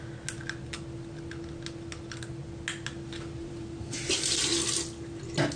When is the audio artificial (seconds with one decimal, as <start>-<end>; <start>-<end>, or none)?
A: 3.4-4.4